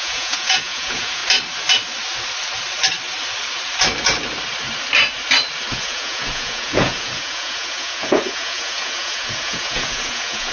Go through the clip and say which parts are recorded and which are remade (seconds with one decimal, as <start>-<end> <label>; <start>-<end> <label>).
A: 0.0-1.2 remade; 1.2-5.7 recorded; 5.7-10.5 remade